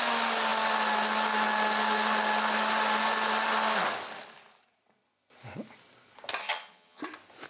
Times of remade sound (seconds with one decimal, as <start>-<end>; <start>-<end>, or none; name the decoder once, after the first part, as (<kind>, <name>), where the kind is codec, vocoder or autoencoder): 6.4-7.0 (vocoder, HiFi-GAN)